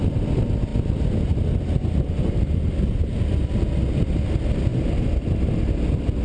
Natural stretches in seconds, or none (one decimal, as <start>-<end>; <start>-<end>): 0.0-4.7; 5.5-6.2